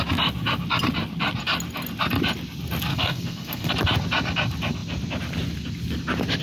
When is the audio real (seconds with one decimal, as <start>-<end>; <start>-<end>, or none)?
0.0-2.9; 3.7-6.4